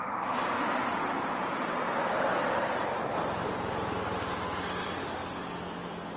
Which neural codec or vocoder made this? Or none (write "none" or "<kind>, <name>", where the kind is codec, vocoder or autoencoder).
none